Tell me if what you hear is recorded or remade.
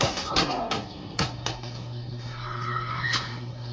remade